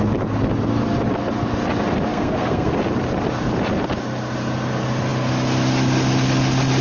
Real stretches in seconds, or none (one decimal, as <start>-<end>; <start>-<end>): 0.0-2.1; 2.7-6.8

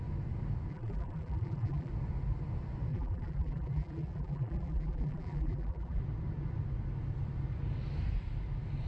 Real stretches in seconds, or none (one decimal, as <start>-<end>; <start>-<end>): 0.0-0.7; 1.9-2.9; 6.0-8.9

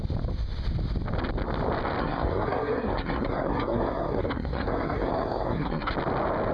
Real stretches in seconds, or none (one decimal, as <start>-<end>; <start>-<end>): 0.0-2.0; 5.9-6.5

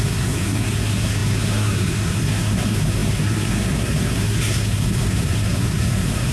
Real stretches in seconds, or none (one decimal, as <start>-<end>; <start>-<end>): none

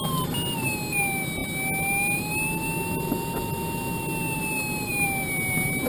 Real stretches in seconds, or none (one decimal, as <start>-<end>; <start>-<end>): 0.0-5.9